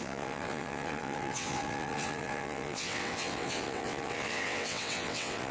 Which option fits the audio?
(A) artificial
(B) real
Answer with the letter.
A